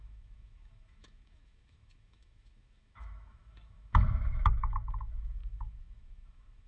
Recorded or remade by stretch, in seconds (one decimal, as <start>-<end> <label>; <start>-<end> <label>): 0.0-6.7 remade